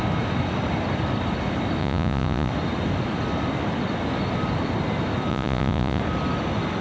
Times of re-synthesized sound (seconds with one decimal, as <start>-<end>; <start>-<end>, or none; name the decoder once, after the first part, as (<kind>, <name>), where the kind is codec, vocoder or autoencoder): 1.8-2.5 (vocoder, Vocos); 5.3-6.0